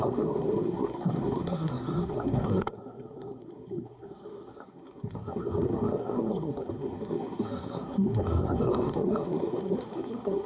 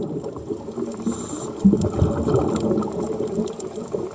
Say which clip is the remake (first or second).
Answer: first